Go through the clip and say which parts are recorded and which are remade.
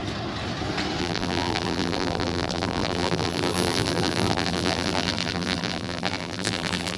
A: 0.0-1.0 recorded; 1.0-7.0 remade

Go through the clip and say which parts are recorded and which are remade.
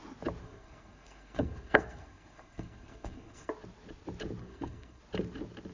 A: 0.0-0.4 recorded; 0.4-3.5 remade; 3.5-4.4 recorded; 4.4-5.0 remade; 5.0-5.7 recorded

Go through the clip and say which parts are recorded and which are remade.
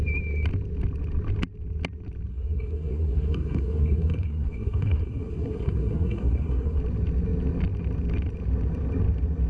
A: 0.0-2.3 recorded; 2.3-6.8 remade; 6.8-9.5 recorded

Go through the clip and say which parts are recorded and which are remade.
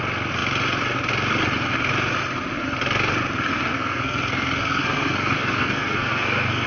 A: 0.0-3.5 recorded; 3.5-6.7 remade